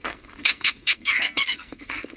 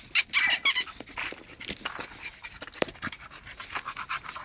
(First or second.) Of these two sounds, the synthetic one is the first